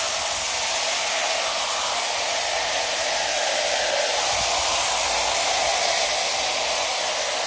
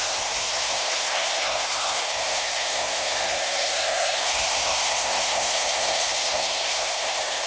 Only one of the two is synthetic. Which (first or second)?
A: second